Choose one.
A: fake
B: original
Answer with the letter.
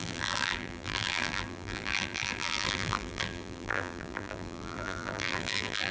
A